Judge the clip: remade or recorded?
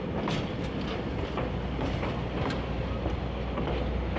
recorded